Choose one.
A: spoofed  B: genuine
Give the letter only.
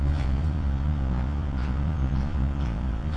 A